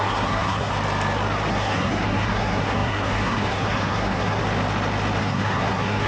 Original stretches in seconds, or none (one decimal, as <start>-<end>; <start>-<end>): 0.7-1.5; 4.4-5.2